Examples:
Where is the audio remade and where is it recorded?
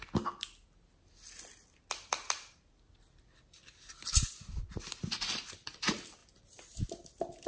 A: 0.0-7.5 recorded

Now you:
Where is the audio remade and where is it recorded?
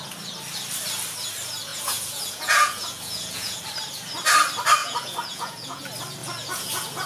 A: 0.0-1.7 recorded; 1.7-3.6 remade; 3.6-4.8 recorded; 4.8-5.8 remade; 5.8-6.2 recorded; 6.2-7.1 remade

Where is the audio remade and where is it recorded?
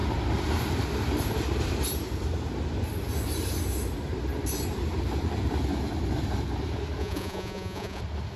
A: 0.0-7.0 recorded; 7.0-8.0 remade; 8.0-8.4 recorded